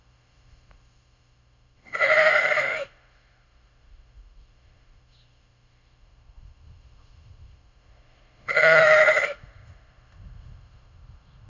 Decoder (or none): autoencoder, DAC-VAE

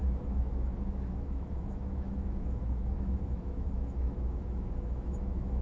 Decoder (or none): autoencoder, DAC-VAE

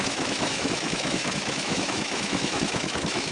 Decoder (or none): autoencoder, DAC-VAE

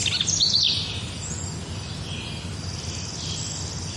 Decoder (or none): none